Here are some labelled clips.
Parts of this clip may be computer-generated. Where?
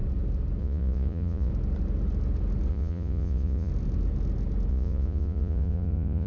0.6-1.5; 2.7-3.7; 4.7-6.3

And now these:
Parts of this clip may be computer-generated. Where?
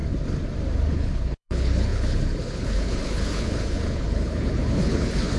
0.9-5.4